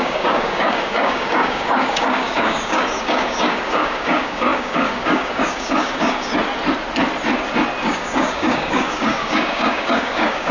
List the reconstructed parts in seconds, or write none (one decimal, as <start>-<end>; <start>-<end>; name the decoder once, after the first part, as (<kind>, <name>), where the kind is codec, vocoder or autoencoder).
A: 0.0-6.3 (codec, DAC); 7.8-10.5